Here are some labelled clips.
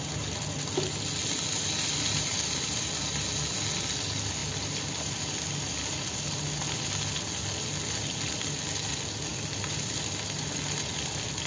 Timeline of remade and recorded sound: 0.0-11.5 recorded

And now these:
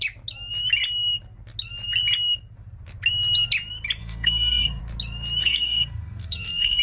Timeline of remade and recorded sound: 0.0-4.0 recorded; 4.0-4.8 remade; 4.8-5.4 recorded; 5.4-6.8 remade